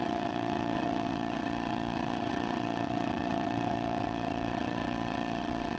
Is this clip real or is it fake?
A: fake